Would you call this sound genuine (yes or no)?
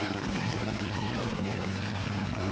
no